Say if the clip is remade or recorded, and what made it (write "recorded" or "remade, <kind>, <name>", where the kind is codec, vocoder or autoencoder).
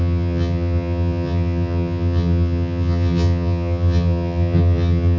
remade, vocoder, HiFi-GAN